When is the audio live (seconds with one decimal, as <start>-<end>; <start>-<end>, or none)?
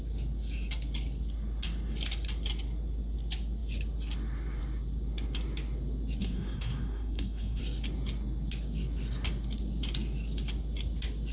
0.0-6.2; 7.6-11.3